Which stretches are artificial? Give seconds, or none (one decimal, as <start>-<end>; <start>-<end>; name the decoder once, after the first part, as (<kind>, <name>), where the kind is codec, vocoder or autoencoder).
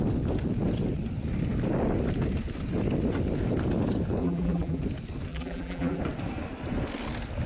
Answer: 4.2-4.8 (vocoder, BigVGAN v2); 5.3-6.0